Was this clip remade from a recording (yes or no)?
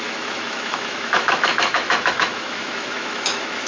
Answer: yes